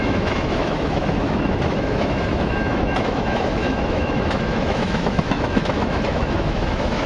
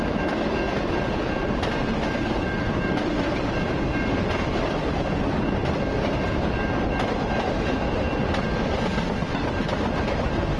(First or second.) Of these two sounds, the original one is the second